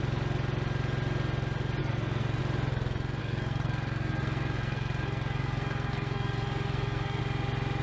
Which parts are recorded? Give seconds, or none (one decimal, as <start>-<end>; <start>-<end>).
0.0-1.8; 2.4-3.2; 7.2-7.8